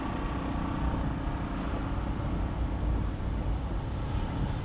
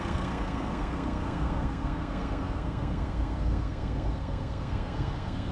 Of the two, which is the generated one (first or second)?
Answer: second